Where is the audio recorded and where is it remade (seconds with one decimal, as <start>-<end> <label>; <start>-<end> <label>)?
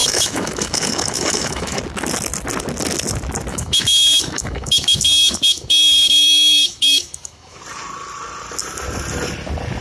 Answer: 0.0-1.8 remade; 1.8-3.5 recorded; 3.5-7.6 remade; 7.6-9.8 recorded